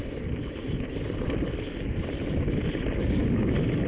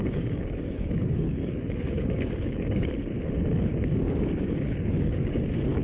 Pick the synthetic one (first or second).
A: second